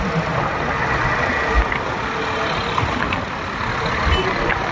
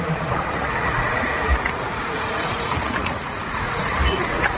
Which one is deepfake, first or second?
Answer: second